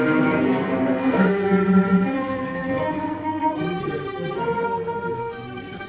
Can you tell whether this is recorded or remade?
remade